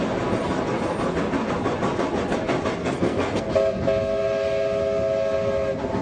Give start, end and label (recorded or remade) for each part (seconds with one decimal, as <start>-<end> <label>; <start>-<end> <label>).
0.0-2.8 recorded; 2.8-3.5 remade; 3.5-6.0 recorded